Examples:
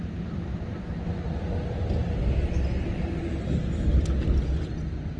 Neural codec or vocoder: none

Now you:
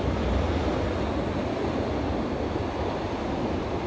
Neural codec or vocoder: none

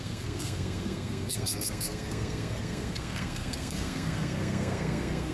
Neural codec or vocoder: codec, SNAC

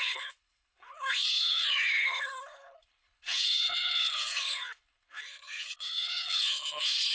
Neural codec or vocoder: codec, HILCodec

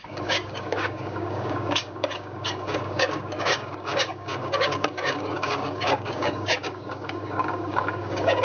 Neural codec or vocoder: codec, DAC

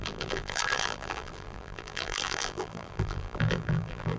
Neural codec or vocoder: vocoder, BigVGAN v2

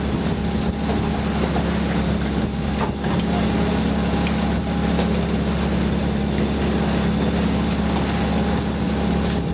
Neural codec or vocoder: none